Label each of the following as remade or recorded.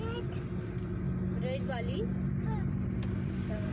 recorded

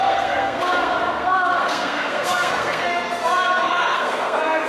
remade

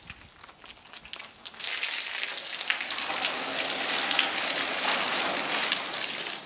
recorded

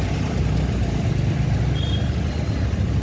recorded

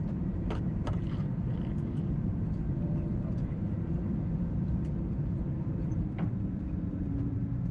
remade